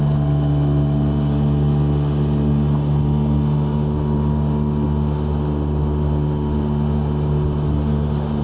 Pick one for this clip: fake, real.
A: real